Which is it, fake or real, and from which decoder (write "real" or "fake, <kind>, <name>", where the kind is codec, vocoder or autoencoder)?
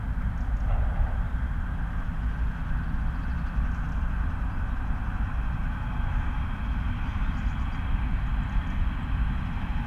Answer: real